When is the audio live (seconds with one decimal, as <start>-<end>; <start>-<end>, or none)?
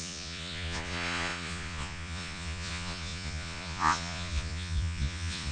none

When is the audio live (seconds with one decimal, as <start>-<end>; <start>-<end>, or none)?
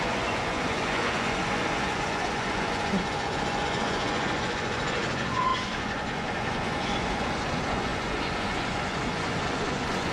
none